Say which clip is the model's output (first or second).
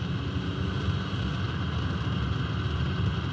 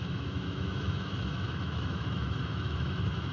second